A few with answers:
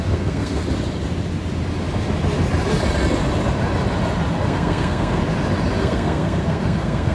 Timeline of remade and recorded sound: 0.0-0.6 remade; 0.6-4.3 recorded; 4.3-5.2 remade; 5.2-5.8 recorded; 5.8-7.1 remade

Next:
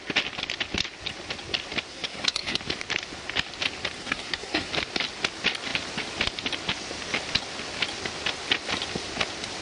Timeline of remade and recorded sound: 0.0-1.9 recorded; 1.9-2.6 remade; 2.6-4.0 recorded; 4.0-4.7 remade; 4.7-9.6 recorded

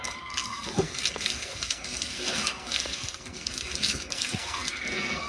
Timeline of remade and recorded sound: 0.0-5.3 remade

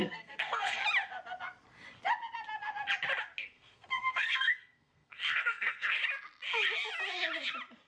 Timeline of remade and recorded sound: 0.0-0.8 remade; 0.8-3.4 recorded; 3.4-6.0 remade; 6.0-7.9 recorded

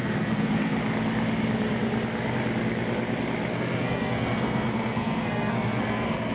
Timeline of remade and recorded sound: 0.0-0.8 remade; 0.8-3.5 recorded; 3.5-6.3 remade

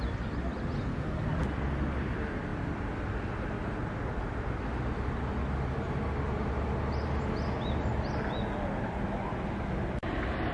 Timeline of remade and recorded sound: 0.0-10.5 recorded

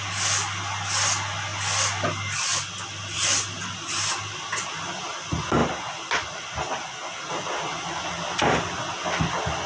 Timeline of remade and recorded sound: 0.0-9.7 recorded